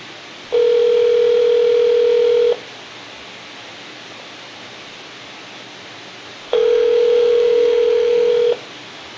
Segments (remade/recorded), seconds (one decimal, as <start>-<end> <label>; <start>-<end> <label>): 0.0-6.5 recorded; 6.5-8.3 remade; 8.3-9.2 recorded